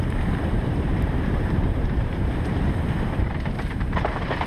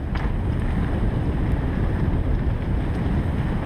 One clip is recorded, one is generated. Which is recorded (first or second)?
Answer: second